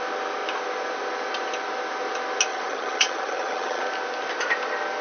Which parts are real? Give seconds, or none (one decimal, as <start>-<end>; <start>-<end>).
0.0-2.5; 3.8-5.0